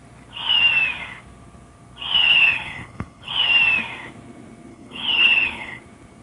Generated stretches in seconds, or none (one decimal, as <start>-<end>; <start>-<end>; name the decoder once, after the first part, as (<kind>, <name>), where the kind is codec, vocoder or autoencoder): 2.2-3.3 (codec, HILCodec); 4.7-5.8